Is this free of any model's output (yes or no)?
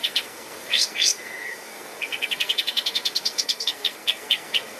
no